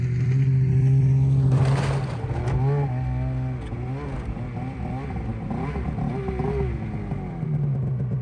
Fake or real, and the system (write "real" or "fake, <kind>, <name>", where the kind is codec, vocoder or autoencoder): real